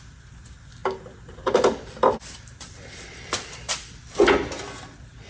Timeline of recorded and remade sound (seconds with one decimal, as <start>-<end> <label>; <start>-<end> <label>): 0.0-0.8 recorded; 0.8-4.0 remade; 4.0-5.3 recorded